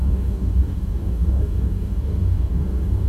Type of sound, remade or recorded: remade